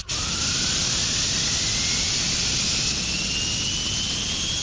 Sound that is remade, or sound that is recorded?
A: recorded